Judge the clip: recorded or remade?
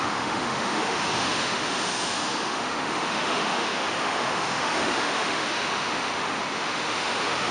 remade